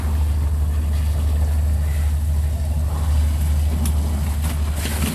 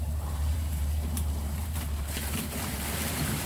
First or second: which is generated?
second